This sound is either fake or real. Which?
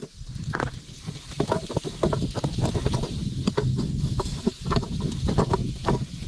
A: real